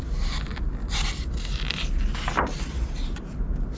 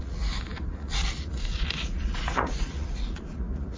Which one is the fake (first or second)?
second